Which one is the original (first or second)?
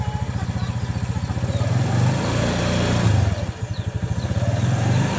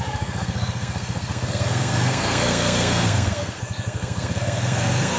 first